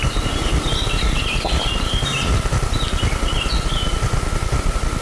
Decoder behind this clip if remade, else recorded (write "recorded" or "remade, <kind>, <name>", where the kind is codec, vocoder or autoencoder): recorded